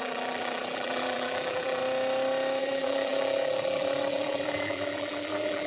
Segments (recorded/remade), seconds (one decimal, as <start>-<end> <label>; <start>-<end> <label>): 0.0-1.8 remade; 1.8-2.6 recorded; 2.6-5.7 remade